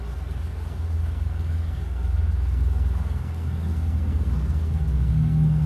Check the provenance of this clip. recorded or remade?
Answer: remade